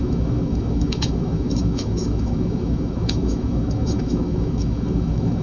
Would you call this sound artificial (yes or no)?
yes